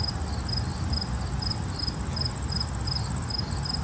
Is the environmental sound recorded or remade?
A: recorded